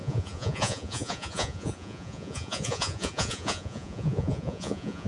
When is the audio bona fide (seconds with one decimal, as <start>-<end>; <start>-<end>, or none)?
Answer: none